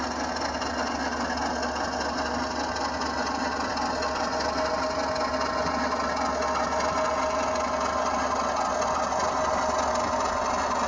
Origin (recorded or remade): recorded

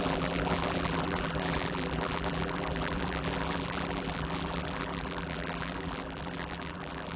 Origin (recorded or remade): remade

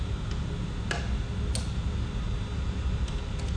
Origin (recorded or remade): recorded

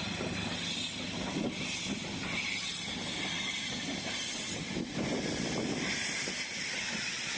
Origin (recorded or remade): recorded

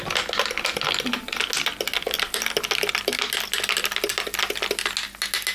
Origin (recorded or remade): recorded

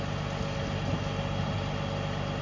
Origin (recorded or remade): recorded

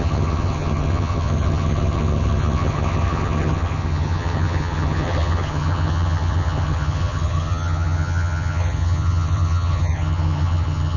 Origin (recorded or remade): remade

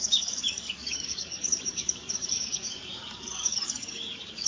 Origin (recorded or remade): remade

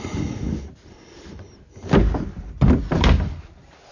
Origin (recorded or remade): recorded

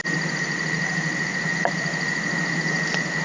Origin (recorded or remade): recorded